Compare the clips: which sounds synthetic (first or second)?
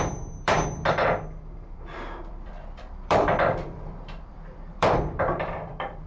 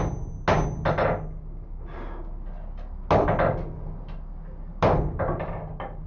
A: first